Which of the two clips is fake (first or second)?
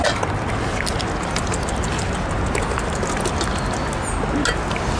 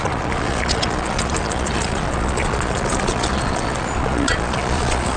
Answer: second